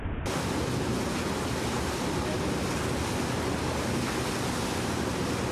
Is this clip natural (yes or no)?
yes